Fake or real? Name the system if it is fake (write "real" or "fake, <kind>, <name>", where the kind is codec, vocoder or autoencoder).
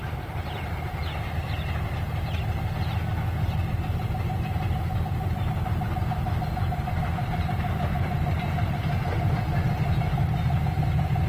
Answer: real